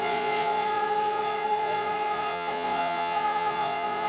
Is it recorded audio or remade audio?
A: remade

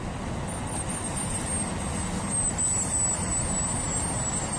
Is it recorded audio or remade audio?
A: recorded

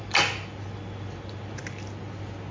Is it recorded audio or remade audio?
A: recorded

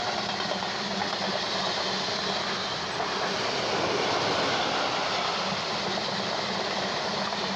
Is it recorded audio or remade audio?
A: recorded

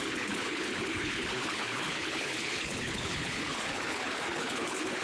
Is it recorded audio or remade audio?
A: remade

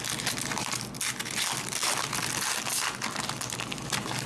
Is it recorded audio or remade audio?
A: recorded